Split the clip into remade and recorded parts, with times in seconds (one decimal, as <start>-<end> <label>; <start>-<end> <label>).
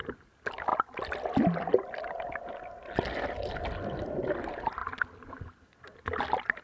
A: 0.0-6.6 recorded